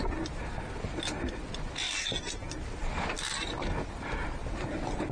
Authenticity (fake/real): real